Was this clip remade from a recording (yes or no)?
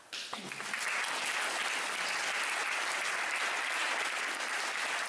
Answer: no